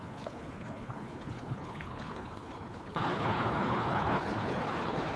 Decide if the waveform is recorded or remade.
remade